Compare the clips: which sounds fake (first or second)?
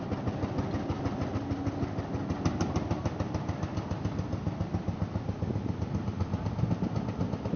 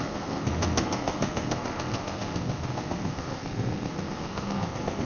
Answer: second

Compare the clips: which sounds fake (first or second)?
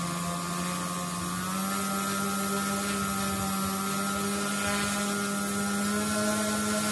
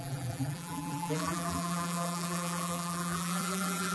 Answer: second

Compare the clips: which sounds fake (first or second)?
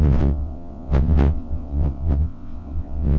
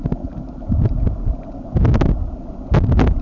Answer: first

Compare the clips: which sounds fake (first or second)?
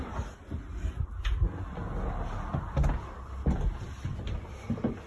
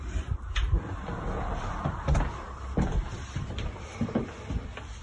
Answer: second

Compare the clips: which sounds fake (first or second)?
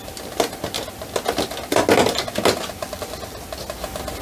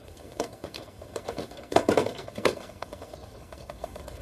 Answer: second